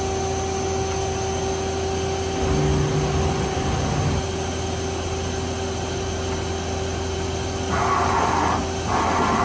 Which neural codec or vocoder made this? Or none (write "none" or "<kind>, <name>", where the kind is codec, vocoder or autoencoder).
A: none